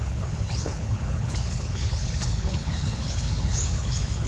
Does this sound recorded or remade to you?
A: remade